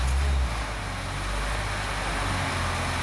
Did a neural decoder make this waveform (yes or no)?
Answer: no